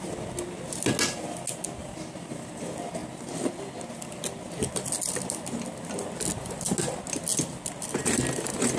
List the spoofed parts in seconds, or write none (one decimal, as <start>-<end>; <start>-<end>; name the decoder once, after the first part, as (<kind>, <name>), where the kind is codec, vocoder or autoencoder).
none